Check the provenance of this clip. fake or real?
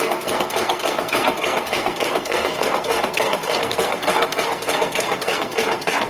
fake